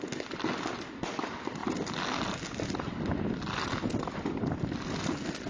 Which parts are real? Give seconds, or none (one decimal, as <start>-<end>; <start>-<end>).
0.0-5.5